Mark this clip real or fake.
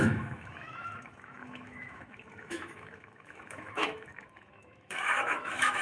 fake